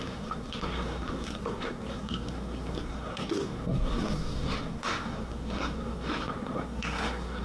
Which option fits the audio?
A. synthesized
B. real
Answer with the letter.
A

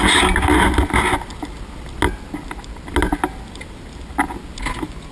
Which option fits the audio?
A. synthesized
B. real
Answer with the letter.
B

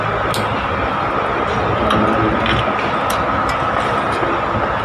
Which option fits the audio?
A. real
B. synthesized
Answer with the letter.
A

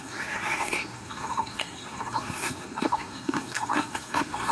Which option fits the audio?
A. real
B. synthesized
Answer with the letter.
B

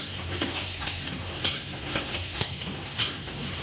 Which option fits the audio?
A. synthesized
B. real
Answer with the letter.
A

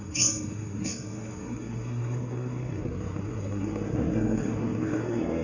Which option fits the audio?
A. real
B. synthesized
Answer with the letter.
B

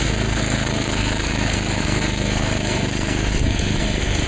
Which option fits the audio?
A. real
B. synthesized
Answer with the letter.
B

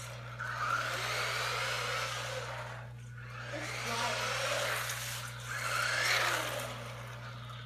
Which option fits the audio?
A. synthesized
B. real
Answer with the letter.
B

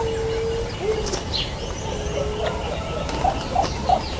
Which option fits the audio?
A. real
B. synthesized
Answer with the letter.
A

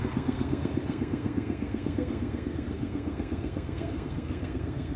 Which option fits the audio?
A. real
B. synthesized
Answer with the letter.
B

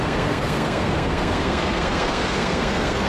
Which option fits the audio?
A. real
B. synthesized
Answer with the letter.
B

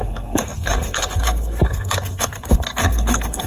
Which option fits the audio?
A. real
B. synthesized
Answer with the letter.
B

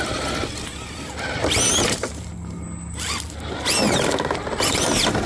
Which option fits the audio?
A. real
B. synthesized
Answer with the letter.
A